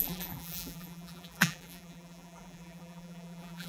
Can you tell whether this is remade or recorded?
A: remade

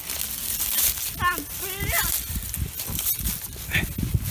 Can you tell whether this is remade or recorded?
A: recorded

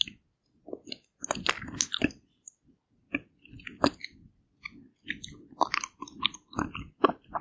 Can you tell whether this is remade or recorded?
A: recorded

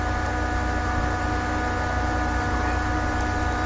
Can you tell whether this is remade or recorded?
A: recorded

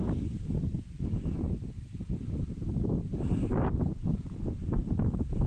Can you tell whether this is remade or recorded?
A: recorded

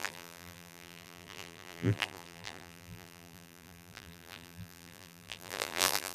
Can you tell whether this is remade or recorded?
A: remade